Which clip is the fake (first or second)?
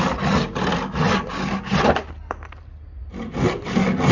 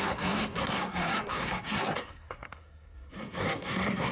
second